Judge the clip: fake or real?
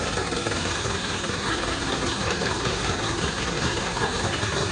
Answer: fake